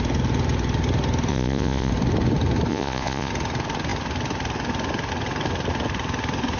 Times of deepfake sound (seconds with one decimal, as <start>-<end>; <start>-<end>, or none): 1.3-1.9; 2.7-3.3